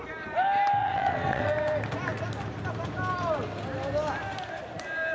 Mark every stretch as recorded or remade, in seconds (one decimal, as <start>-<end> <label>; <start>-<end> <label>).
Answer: 0.0-0.8 recorded; 0.8-1.5 remade; 1.5-5.1 recorded